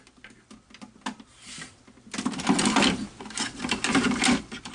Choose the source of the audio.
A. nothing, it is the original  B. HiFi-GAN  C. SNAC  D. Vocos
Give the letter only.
A